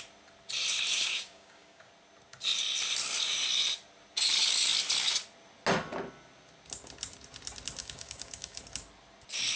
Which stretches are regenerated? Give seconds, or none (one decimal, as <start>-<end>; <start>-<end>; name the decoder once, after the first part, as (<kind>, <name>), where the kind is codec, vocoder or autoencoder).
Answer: 0.9-1.9 (codec, DAC); 7.8-8.6

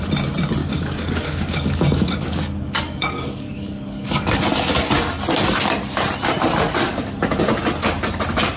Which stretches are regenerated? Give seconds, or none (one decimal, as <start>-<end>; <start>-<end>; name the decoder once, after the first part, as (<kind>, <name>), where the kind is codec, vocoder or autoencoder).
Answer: 0.6-4.4 (codec, DAC); 6.8-7.4